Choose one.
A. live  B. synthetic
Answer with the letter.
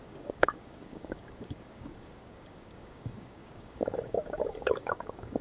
B